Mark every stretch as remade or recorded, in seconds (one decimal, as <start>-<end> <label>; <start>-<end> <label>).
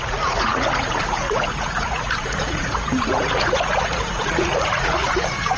0.0-5.6 remade